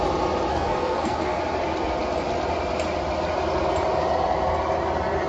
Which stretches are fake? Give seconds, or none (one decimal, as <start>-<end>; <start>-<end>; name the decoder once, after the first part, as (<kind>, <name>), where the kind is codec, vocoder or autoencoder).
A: 0.5-1.4 (codec, SNAC)